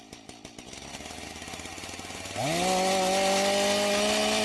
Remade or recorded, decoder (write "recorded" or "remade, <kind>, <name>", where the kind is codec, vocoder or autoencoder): recorded